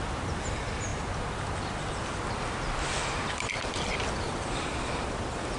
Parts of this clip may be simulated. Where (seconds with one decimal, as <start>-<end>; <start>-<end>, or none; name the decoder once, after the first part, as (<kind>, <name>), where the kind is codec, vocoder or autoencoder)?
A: none